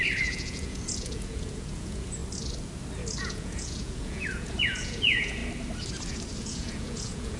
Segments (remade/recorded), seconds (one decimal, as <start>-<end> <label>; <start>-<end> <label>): 0.0-2.2 remade; 2.2-3.2 recorded; 3.2-5.4 remade; 5.4-6.4 recorded; 6.4-7.4 remade